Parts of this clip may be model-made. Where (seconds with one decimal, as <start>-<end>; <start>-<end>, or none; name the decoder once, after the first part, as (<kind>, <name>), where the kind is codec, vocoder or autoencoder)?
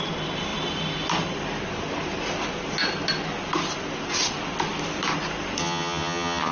5.6-6.5 (vocoder, HiFi-GAN)